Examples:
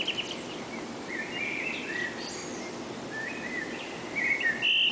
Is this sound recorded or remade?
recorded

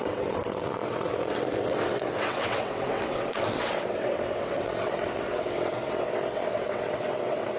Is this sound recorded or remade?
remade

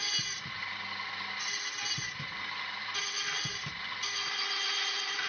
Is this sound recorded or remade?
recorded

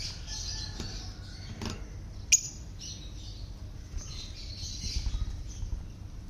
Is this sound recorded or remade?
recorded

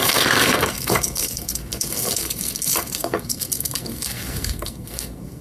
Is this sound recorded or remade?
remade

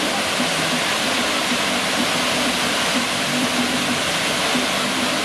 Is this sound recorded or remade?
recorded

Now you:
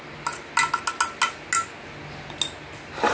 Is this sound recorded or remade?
recorded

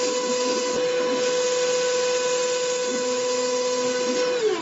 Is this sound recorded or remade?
recorded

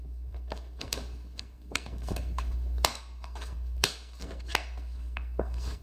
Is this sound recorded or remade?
remade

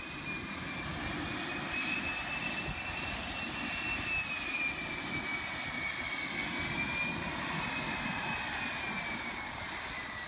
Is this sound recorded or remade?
recorded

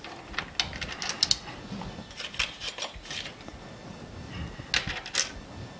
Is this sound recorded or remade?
recorded